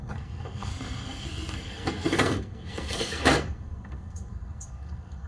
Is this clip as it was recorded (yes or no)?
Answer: no